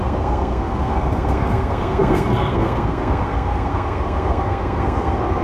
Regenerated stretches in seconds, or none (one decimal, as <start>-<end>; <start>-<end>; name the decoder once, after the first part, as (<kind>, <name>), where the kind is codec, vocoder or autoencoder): 0.0-5.4 (codec, SNAC)